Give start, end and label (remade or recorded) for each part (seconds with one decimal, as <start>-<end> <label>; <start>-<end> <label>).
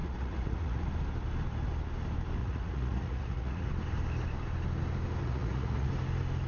0.0-0.8 remade; 0.8-2.4 recorded; 2.4-3.7 remade; 3.7-5.2 recorded; 5.2-5.9 remade; 5.9-6.5 recorded